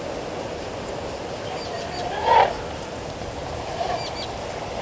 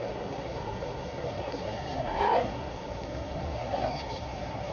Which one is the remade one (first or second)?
second